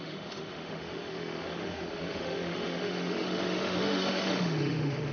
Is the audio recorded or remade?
remade